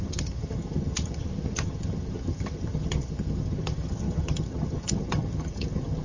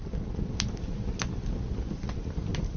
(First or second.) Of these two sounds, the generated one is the first